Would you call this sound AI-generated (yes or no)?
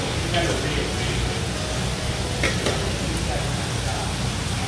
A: no